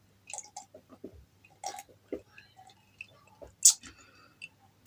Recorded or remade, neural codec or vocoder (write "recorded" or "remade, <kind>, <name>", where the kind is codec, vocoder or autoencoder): recorded